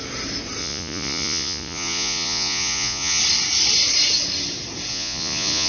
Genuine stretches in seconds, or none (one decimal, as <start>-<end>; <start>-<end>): 0.0-0.6; 3.2-4.9